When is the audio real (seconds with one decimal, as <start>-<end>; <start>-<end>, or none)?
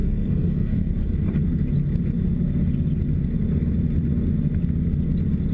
0.9-5.5